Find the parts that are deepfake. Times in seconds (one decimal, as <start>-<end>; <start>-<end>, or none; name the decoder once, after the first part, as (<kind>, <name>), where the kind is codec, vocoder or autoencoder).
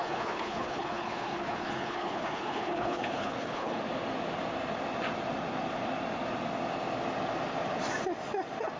0.0-3.8 (codec, HILCodec)